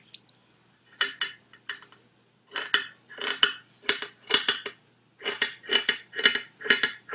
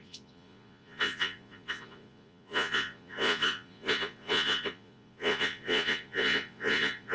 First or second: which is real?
first